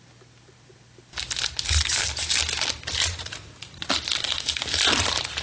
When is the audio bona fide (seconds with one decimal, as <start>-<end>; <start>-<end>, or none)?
0.0-3.0; 3.9-5.4